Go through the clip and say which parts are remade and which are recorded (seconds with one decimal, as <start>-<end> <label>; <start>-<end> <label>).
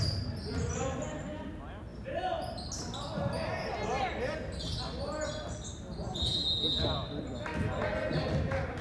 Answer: 0.0-8.8 recorded